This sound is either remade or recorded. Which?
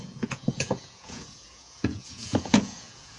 remade